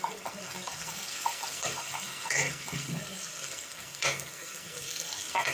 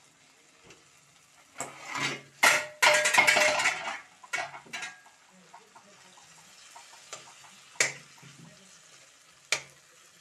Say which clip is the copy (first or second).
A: first